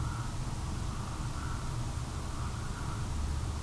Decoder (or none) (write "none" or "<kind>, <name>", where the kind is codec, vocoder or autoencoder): vocoder, BigVGAN v2